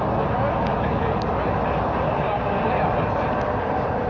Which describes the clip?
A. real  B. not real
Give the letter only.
A